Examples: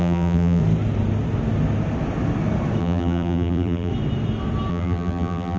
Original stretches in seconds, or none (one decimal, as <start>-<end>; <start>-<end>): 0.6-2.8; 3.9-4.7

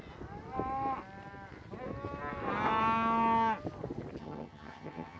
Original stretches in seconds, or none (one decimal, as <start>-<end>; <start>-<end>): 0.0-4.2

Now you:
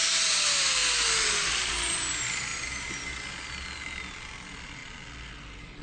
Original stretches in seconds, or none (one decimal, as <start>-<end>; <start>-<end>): 0.0-5.8

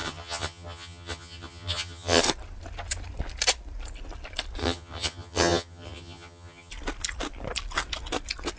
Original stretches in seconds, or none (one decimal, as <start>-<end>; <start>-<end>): 2.2-4.6; 6.7-8.6

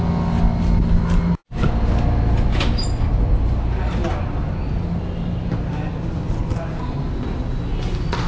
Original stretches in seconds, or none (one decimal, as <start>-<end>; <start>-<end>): 0.0-8.3